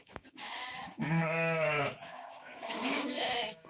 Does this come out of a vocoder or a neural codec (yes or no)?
yes